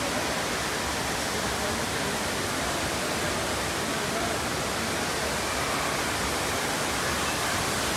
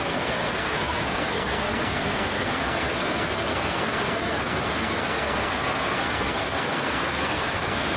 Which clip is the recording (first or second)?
first